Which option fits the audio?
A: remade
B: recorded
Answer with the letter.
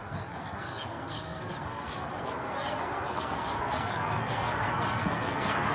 A